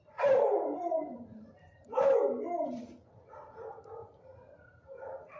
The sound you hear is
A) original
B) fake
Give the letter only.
B